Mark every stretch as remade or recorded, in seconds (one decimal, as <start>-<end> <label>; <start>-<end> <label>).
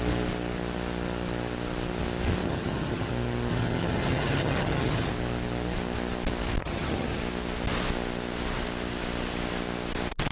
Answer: 0.0-2.4 recorded; 2.4-3.1 remade; 3.1-3.5 recorded; 3.5-5.1 remade; 5.1-6.6 recorded; 6.6-7.2 remade; 7.2-10.3 recorded